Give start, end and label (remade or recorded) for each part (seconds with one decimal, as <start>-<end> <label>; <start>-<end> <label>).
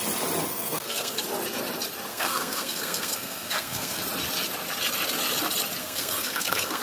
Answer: 0.0-0.5 recorded; 0.5-1.2 remade; 1.2-2.1 recorded; 2.1-4.0 remade; 4.0-5.8 recorded; 5.8-6.8 remade